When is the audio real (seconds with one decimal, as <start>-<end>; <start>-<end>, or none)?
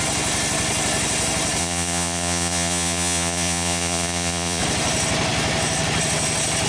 0.0-1.6; 4.6-6.7